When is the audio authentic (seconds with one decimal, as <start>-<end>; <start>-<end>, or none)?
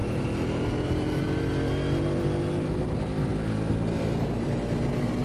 0.0-5.2